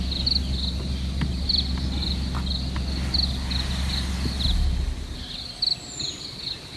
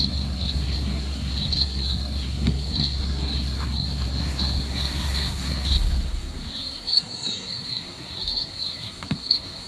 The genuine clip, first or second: first